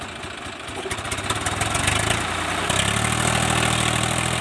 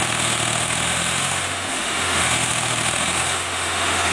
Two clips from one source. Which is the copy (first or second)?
second